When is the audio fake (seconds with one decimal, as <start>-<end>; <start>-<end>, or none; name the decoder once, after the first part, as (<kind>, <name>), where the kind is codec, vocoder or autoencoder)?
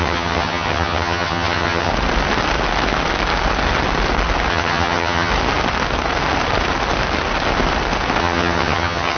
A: 0.0-1.9 (vocoder, HiFi-GAN); 4.5-5.3; 8.2-9.2